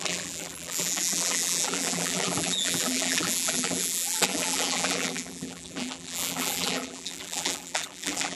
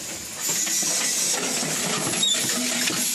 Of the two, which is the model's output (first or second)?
first